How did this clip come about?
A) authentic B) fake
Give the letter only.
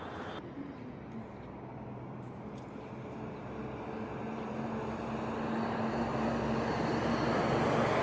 A